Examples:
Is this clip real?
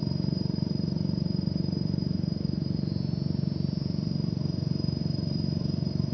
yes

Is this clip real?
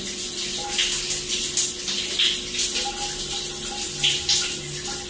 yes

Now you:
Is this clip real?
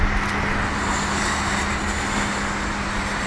yes